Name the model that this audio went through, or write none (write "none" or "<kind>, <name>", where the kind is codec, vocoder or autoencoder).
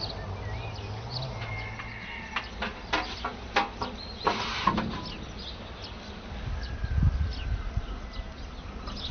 none